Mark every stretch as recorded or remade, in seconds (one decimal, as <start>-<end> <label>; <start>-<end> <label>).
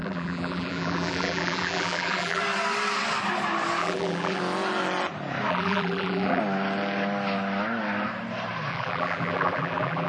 0.0-2.4 remade; 2.4-3.8 recorded; 3.8-4.4 remade; 4.4-5.5 recorded; 5.5-6.4 remade; 6.4-8.7 recorded; 8.7-10.1 remade